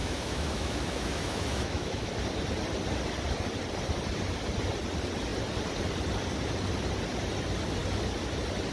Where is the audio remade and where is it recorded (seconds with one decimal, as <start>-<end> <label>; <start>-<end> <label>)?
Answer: 0.0-2.1 remade; 2.1-8.7 recorded